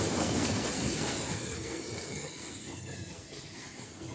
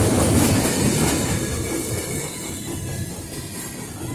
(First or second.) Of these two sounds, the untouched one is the second